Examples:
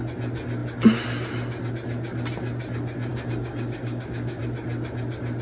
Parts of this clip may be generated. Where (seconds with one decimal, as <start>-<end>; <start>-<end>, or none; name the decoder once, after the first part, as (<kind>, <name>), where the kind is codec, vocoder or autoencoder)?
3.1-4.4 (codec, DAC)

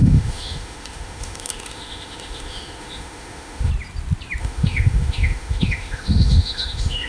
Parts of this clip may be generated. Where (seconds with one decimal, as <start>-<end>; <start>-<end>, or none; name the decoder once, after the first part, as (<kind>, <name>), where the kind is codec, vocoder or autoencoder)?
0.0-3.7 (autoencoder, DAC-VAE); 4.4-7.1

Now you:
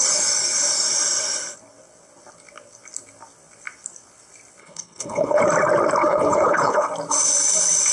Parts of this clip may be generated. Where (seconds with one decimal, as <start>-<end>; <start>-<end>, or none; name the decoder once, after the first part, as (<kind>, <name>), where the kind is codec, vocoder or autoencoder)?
4.6-5.4 (codec, HILCodec); 6.0-6.9

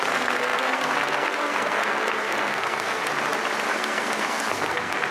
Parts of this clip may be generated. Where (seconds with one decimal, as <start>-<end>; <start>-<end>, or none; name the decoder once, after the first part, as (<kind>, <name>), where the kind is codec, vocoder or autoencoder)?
0.0-3.0 (codec, SNAC); 3.7-5.1